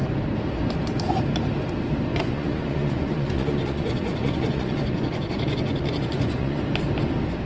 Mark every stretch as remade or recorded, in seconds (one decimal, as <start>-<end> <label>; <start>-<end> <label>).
0.0-2.1 recorded; 2.1-6.6 remade; 6.6-7.5 recorded